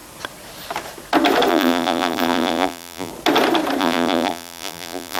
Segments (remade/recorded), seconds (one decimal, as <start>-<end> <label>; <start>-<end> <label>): 0.0-1.5 recorded; 1.5-3.1 remade; 3.1-3.8 recorded; 3.8-5.2 remade